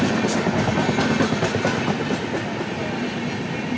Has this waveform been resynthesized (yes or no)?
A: no